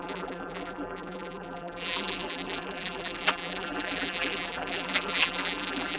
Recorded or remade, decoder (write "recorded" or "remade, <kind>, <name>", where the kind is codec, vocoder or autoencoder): remade, vocoder, BigVGAN v2